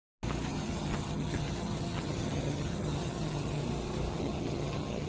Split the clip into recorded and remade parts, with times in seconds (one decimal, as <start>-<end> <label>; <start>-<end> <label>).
0.0-0.5 recorded; 0.5-3.6 remade; 3.6-4.1 recorded; 4.1-5.1 remade